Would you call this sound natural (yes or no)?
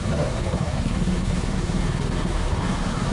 no